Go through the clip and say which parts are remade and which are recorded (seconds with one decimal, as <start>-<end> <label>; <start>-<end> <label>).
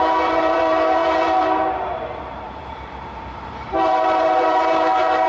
0.0-5.3 remade